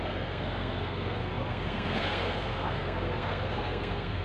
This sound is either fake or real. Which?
fake